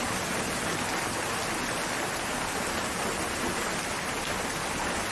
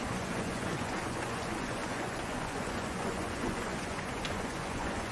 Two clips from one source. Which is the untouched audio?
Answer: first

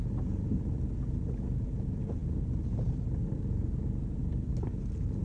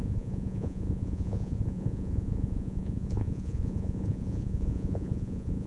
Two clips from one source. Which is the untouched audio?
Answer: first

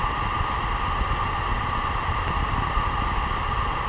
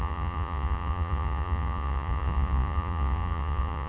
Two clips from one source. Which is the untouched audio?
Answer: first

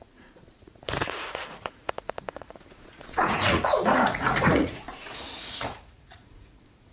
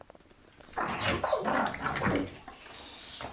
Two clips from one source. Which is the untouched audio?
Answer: second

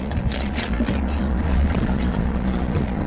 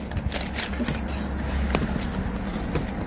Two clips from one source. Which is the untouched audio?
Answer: second